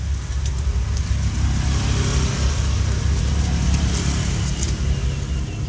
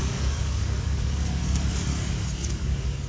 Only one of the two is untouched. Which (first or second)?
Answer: first